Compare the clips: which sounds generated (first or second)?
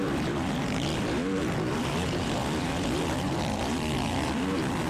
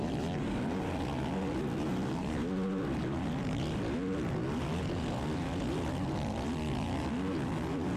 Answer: first